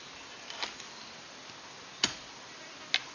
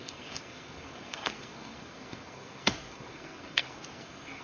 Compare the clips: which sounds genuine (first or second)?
first